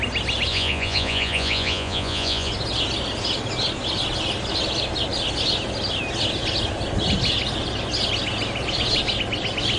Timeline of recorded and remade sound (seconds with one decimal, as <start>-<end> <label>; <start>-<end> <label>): 0.0-0.5 recorded; 0.5-2.5 remade; 2.5-9.8 recorded